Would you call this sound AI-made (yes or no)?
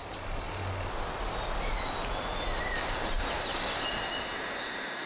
no